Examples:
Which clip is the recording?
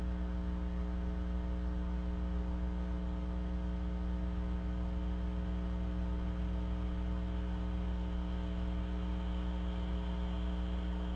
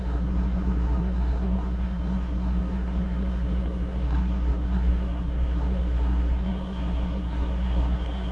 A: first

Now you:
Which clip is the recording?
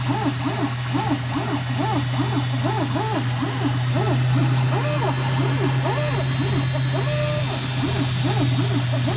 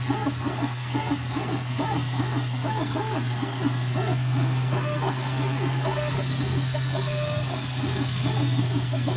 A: first